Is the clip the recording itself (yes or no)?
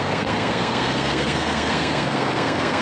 no